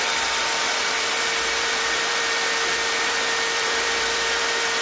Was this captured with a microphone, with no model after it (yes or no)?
no